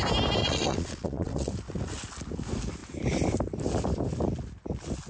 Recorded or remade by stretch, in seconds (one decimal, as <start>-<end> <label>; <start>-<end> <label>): 0.0-0.4 recorded; 0.4-1.5 remade; 1.5-5.1 recorded